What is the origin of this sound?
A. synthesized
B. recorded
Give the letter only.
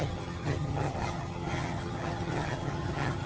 A